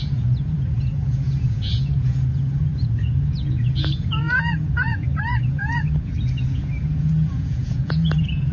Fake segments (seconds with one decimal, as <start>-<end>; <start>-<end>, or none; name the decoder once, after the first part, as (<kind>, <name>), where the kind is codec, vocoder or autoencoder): 0.0-8.5 (vocoder, Vocos)